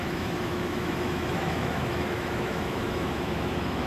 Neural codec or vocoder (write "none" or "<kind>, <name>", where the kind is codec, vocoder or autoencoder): autoencoder, DAC-VAE